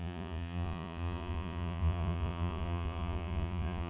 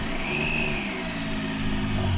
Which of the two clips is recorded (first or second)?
second